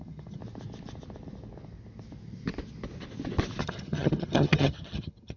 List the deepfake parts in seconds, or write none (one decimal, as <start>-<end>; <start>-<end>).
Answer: 0.0-0.4; 3.6-5.4

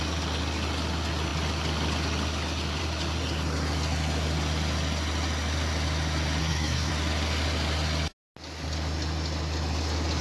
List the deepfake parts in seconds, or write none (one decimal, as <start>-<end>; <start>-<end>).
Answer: 6.4-6.9

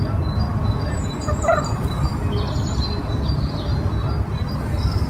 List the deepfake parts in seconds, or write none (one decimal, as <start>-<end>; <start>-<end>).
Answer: 0.5-3.6

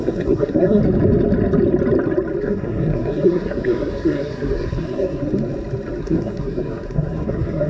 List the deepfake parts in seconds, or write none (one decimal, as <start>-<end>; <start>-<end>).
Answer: 0.0-0.8; 2.4-5.2; 6.0-7.7

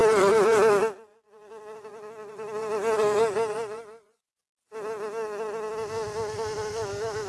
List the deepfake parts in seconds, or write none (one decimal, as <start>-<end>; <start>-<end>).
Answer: 0.0-4.4

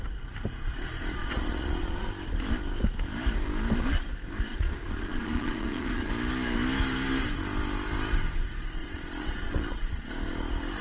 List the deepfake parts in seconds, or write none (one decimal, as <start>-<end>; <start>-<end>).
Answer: 1.2-2.1; 4.5-6.1; 8.8-10.1

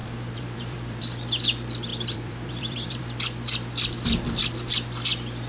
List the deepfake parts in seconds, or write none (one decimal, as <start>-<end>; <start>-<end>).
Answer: 0.0-1.0; 1.9-3.0

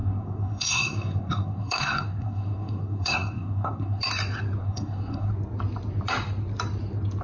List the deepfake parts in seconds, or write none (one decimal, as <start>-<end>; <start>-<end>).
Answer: 0.0-4.0; 4.6-5.3